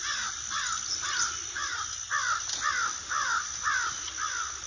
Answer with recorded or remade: recorded